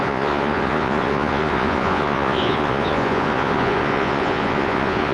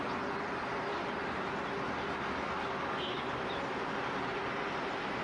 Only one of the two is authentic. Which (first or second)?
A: second